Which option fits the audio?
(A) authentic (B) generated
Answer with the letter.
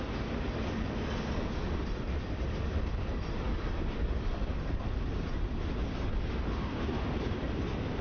A